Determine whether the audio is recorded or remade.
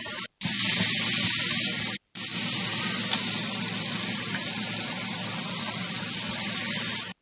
remade